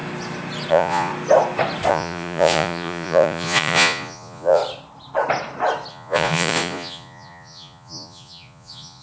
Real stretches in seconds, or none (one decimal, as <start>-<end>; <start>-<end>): 0.0-0.7; 1.1-1.9; 4.6-5.9